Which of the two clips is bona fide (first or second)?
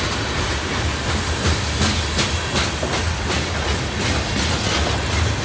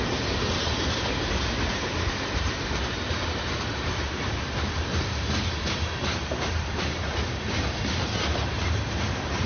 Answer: first